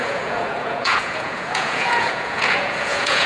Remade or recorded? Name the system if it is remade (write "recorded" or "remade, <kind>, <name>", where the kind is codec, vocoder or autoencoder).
remade, vocoder, Vocos